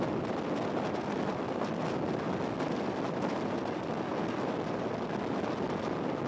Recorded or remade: recorded